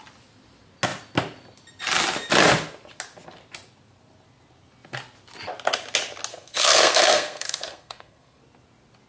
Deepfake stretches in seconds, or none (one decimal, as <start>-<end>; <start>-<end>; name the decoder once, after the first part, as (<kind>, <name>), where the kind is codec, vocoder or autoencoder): 6.3-8.4 (codec, SNAC)